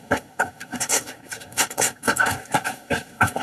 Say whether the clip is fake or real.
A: fake